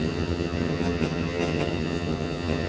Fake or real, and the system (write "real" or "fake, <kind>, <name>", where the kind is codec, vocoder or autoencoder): fake, vocoder, HiFi-GAN